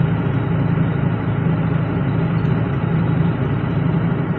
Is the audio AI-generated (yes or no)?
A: no